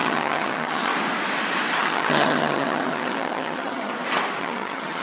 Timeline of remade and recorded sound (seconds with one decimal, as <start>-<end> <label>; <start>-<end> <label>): 0.0-0.9 remade; 0.9-1.8 recorded; 1.8-3.9 remade; 3.9-4.4 recorded; 4.4-5.0 remade